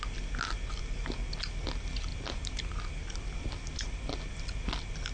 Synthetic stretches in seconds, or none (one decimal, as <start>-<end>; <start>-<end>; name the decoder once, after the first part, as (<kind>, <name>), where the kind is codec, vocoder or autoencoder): none